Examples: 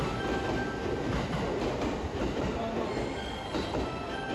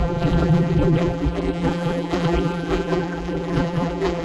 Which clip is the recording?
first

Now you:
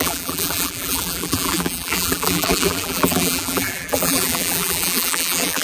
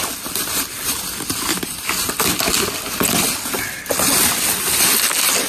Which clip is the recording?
second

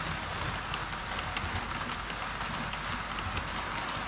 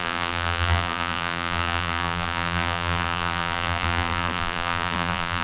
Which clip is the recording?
first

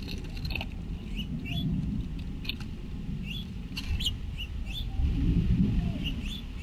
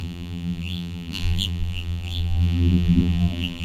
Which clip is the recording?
first